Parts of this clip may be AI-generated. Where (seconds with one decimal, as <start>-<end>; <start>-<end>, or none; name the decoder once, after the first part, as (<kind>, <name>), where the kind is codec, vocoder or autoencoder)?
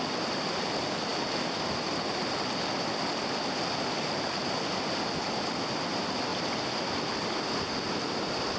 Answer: none